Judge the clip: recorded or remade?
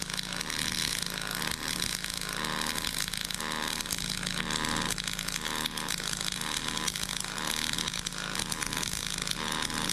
recorded